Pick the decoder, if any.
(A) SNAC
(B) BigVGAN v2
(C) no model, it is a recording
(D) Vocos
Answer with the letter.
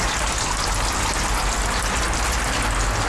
C